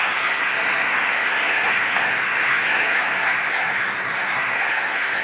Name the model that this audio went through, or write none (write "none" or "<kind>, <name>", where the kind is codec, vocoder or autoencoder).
codec, SNAC